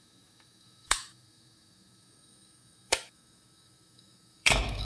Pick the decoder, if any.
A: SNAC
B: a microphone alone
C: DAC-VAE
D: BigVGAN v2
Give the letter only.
C